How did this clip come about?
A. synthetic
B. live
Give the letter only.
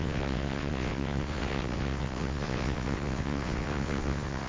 A